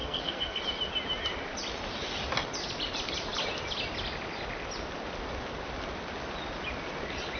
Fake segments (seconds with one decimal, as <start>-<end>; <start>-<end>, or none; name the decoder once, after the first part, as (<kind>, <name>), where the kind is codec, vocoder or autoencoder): 0.0-0.6 (codec, SNAC)